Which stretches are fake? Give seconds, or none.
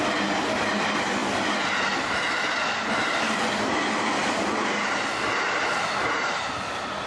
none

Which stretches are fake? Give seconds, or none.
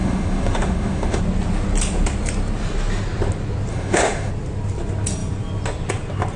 0.0-1.2 (autoencoder, DAC-VAE); 3.7-4.3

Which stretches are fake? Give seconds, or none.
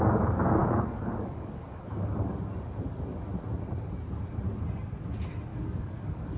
0.6-2.3 (codec, DAC); 5.5-6.4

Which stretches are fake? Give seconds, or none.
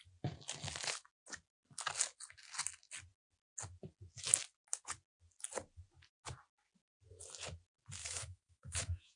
8.0-9.2 (autoencoder, DAC-VAE)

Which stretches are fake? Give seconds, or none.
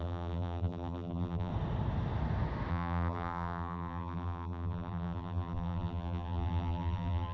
0.0-1.5 (vocoder, BigVGAN v2); 2.7-7.3